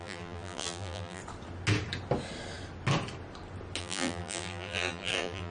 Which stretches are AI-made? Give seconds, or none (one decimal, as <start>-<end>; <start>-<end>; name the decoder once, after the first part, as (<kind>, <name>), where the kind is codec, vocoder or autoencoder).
0.0-1.2 (vocoder, BigVGAN v2); 3.8-5.5